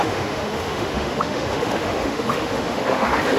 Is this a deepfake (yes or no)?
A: yes